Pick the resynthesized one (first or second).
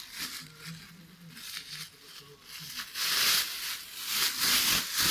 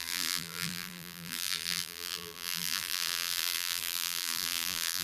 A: second